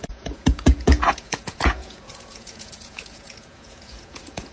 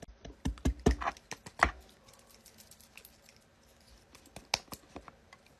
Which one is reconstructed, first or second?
first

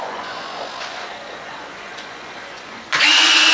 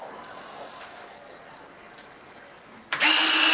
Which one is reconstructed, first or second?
first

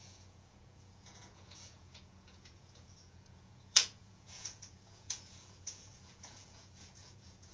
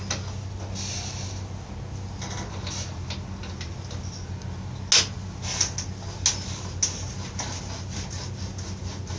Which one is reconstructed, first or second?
first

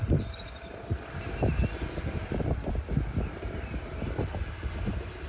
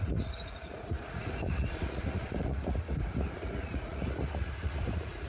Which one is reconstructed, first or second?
second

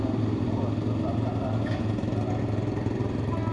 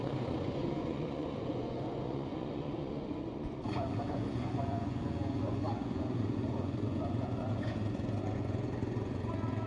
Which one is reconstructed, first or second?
second